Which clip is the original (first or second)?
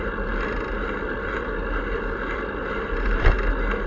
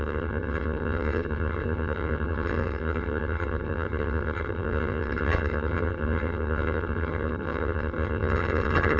first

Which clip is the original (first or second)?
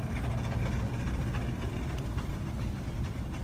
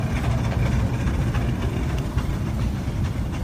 first